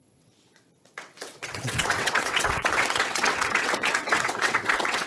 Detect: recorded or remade remade